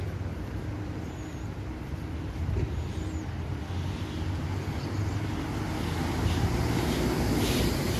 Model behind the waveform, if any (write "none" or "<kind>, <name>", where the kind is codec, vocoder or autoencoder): none